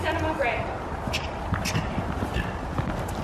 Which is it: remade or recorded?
recorded